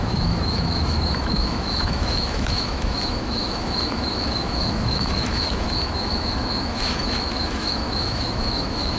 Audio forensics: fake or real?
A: fake